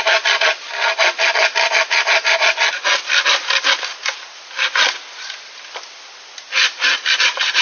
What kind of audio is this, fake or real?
real